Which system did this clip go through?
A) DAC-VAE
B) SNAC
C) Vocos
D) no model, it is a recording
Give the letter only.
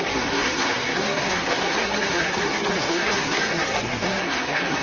B